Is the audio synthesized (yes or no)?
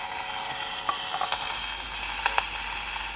no